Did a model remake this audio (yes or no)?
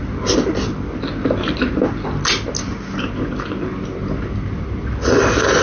no